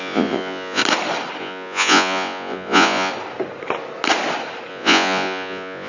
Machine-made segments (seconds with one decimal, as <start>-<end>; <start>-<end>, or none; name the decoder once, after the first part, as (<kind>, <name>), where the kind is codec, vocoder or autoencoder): 0.0-0.8 (vocoder, Vocos); 1.4-3.1; 4.7-5.9